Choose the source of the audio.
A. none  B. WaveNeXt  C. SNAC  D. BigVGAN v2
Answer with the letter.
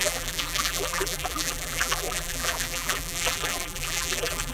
D